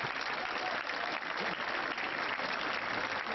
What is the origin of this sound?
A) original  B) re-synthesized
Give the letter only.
A